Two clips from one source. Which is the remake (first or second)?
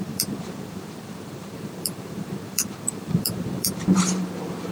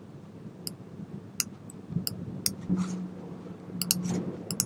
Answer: first